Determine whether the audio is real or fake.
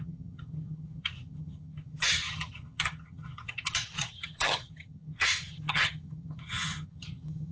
fake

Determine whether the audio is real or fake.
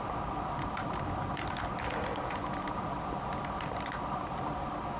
fake